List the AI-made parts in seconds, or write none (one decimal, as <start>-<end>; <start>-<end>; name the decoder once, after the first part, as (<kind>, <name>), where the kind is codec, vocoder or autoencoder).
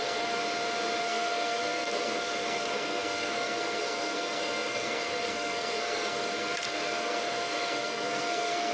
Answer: 0.0-0.4 (codec, SNAC); 1.0-8.7